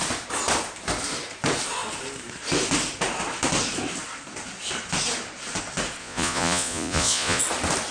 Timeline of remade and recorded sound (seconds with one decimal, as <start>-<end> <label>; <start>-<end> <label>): 0.0-6.0 recorded; 6.0-7.4 remade; 7.4-7.9 recorded